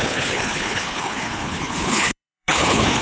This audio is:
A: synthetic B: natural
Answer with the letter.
A